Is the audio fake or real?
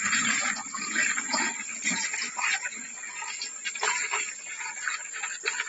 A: real